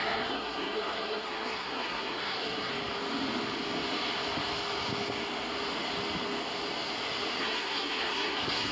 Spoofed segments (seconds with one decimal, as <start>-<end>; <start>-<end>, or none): 0.0-2.7; 7.4-8.7

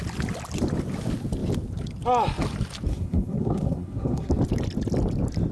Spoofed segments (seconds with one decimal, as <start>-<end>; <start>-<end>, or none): 2.9-4.3

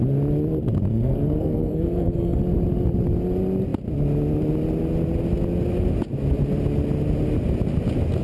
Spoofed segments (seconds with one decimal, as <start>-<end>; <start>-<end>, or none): 0.9-2.4

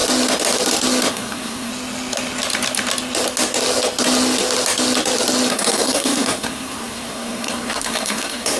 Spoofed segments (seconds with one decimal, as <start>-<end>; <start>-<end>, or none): 1.1-1.7; 5.5-8.6

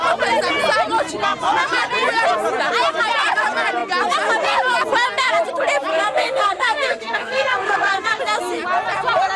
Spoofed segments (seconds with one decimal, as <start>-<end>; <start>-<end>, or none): 5.9-8.2

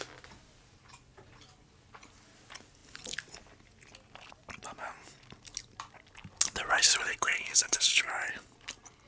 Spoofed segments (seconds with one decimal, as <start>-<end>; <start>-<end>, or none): 7.1-8.1

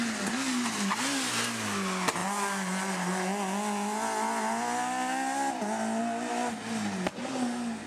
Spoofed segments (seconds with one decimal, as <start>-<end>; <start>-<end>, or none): none